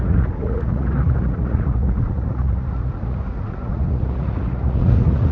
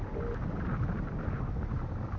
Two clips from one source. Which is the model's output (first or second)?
first